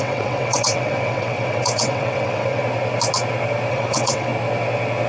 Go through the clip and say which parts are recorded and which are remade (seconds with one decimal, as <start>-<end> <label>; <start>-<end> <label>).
0.0-2.6 remade; 2.6-3.7 recorded; 3.7-4.3 remade; 4.3-5.1 recorded